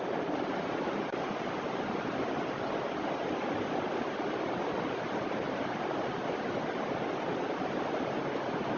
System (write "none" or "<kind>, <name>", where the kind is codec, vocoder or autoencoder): none